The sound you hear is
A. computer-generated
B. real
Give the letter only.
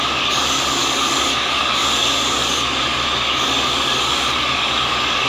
A